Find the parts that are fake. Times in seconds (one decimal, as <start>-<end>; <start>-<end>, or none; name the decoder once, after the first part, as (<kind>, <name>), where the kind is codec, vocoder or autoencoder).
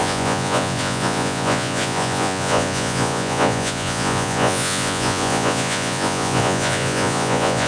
0.0-7.7 (vocoder, Vocos)